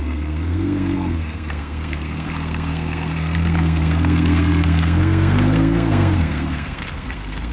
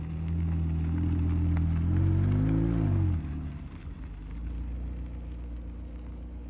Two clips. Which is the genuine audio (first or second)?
second